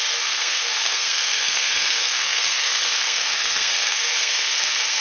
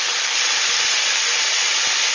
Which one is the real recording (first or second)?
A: second